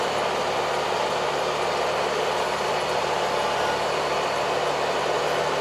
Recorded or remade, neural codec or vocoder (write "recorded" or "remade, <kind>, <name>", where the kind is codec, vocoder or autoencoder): recorded